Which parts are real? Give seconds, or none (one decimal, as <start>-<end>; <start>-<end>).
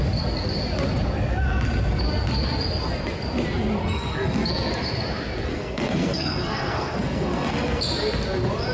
0.0-3.8; 4.7-5.5; 7.8-8.7